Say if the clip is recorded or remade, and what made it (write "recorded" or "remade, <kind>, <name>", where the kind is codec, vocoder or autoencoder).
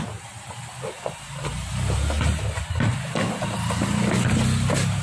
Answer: recorded